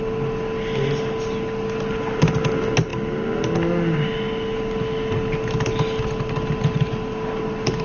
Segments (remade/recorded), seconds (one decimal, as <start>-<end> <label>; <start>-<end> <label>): 0.0-7.8 recorded